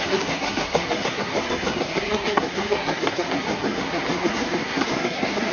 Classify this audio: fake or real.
fake